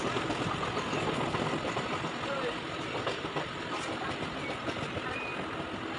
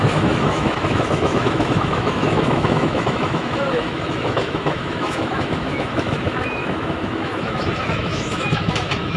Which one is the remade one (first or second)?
second